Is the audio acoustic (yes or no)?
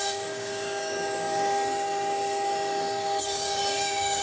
no